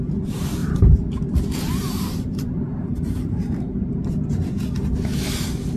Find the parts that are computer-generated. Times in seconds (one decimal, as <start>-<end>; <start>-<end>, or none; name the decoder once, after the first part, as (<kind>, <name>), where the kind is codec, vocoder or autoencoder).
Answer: 0.6-4.1 (vocoder, BigVGAN v2)